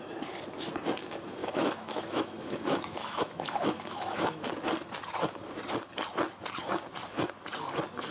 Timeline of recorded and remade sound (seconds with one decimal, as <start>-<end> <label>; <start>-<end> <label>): 0.0-1.4 recorded; 1.4-4.5 remade; 4.5-8.1 recorded